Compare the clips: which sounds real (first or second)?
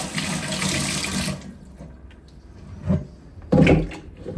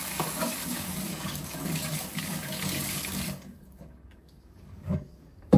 first